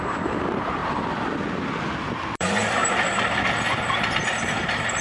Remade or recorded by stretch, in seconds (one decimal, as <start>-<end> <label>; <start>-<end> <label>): 0.0-0.8 remade; 0.8-2.0 recorded; 2.0-2.8 remade; 2.8-5.0 recorded